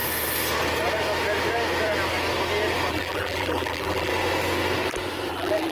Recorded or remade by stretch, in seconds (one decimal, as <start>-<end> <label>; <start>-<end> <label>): 0.0-2.9 recorded; 2.9-4.1 remade; 4.1-5.3 recorded; 5.3-5.7 remade